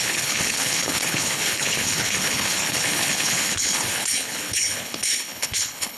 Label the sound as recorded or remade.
remade